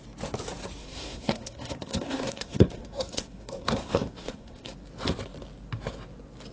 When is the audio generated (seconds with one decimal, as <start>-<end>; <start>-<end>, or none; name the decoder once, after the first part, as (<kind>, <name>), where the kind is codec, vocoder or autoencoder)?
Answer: 0.8-4.7 (codec, SNAC)